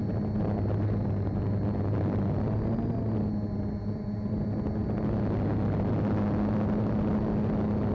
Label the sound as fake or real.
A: real